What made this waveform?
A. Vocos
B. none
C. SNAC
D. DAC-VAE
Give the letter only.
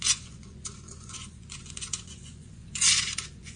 A